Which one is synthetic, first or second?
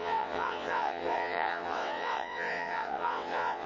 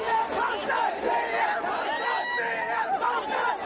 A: first